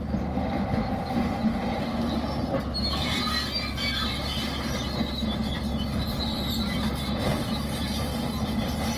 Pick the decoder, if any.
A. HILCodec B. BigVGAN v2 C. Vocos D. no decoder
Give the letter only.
D